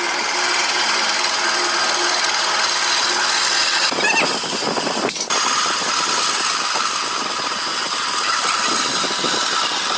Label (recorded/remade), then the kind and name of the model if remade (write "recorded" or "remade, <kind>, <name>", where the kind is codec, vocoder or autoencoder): recorded